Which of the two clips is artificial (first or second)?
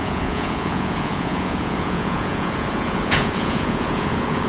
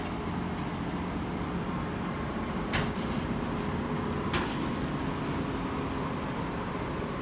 first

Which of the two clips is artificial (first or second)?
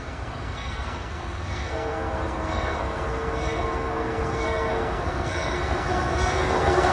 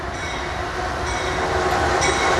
first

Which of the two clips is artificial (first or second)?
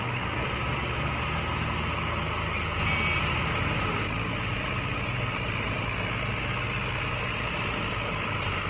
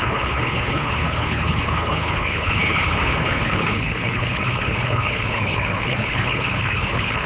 second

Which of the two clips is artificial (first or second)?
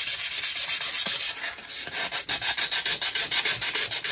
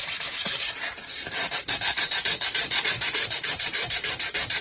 second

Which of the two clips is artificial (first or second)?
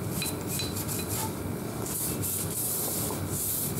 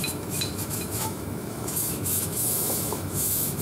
second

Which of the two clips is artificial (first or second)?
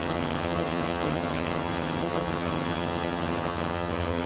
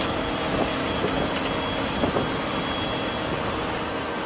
first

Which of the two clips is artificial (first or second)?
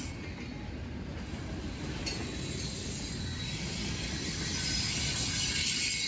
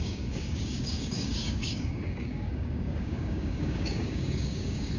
second